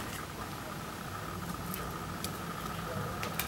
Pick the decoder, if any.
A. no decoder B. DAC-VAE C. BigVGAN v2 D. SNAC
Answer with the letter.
A